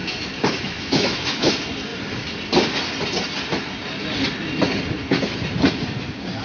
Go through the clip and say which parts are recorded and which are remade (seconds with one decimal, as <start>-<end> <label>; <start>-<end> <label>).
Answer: 0.0-1.5 remade; 1.5-6.4 recorded